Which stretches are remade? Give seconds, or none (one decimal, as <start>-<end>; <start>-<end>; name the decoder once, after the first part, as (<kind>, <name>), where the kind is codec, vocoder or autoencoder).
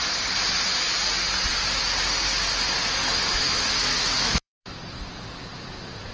3.0-4.7 (autoencoder, DAC-VAE)